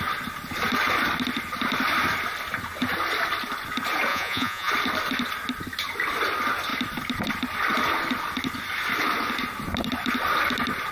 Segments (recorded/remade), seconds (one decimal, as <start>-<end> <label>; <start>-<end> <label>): 0.0-4.1 recorded; 4.1-4.7 remade; 4.7-10.9 recorded